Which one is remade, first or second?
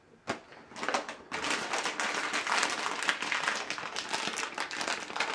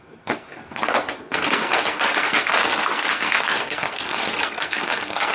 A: second